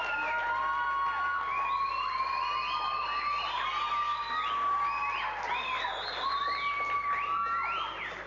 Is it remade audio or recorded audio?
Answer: recorded